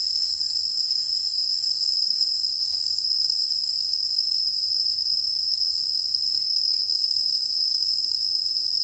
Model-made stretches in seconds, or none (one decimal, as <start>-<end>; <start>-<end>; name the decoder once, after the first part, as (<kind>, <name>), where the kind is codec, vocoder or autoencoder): 0.0-8.8 (codec, SNAC)